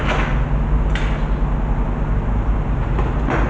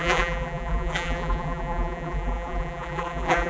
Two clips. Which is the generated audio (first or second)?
second